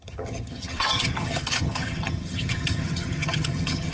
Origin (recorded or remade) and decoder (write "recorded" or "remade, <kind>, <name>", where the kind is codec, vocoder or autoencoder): remade, vocoder, HiFi-GAN